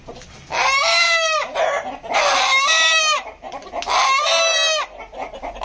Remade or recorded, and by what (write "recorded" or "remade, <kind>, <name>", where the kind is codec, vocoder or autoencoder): recorded